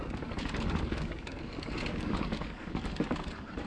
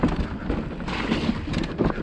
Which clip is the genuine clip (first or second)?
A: second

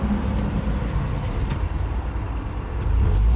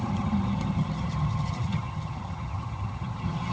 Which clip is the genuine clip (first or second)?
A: first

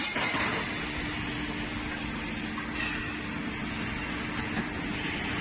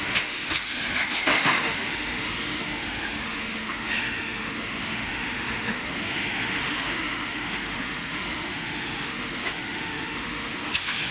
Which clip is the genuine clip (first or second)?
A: first